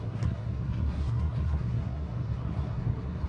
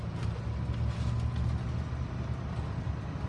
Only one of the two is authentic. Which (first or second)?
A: second